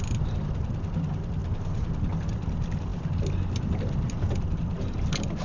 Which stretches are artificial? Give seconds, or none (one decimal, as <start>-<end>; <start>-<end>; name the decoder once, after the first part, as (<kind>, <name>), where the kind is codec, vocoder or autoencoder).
none